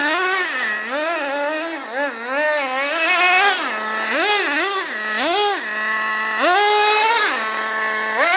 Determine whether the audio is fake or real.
real